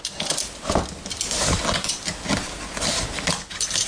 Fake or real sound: real